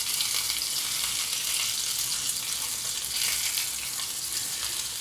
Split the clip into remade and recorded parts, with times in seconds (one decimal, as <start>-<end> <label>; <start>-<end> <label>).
0.0-5.0 recorded